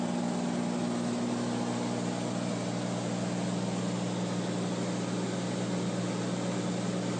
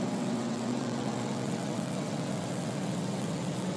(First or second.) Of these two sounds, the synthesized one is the second